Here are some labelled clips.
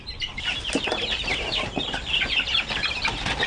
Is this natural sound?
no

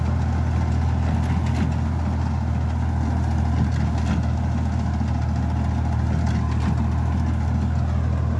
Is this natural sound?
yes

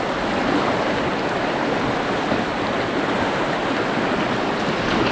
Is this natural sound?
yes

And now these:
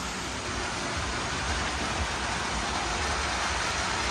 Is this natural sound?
yes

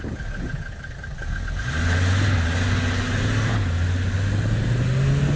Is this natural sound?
yes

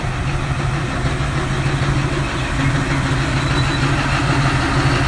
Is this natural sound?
yes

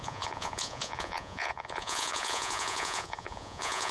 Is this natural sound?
no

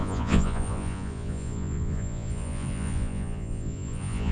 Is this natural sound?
no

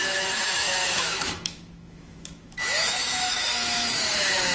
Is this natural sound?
no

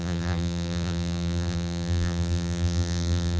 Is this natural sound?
no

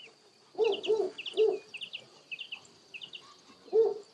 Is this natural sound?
yes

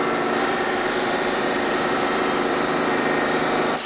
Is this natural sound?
no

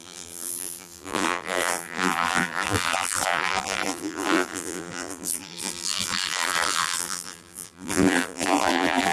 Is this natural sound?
no